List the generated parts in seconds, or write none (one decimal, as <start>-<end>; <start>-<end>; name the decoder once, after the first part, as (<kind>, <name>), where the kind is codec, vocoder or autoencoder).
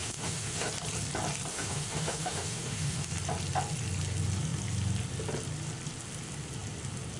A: 0.0-0.7 (autoencoder, DAC-VAE); 1.5-3.1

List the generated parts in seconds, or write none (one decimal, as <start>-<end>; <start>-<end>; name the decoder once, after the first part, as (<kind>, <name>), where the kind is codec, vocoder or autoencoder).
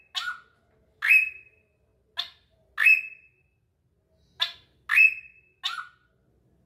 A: none